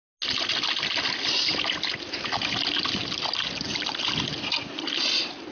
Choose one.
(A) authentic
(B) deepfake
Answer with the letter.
A